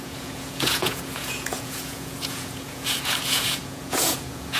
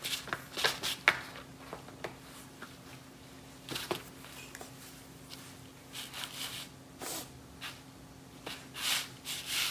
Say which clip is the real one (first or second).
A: second